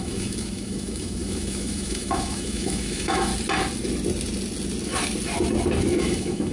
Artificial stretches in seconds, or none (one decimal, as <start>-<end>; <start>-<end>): 0.0-3.3; 6.0-6.5